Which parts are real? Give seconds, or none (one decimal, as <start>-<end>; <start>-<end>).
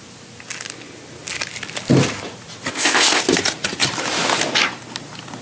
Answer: 0.0-2.7; 3.2-5.4